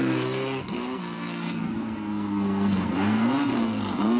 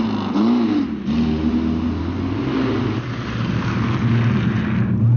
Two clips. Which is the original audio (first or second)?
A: second